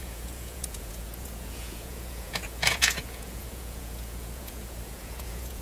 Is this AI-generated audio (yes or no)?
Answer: yes